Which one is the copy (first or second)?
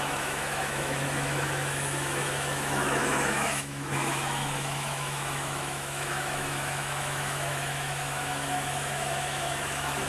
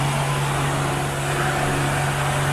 first